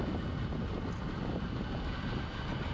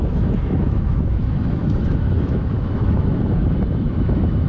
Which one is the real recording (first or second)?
first